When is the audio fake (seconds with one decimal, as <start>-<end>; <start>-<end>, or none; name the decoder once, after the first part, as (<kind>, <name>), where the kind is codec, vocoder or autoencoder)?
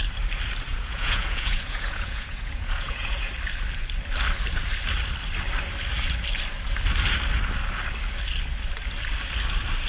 0.7-3.3 (vocoder, Vocos)